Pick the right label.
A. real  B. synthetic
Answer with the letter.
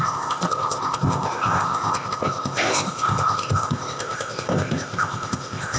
B